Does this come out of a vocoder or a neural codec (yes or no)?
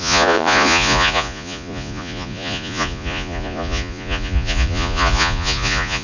yes